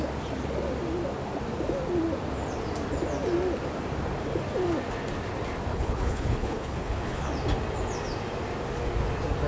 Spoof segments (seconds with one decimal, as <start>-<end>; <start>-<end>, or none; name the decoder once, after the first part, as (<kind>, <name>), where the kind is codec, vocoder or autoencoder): 5.7-7.3 (codec, HILCodec)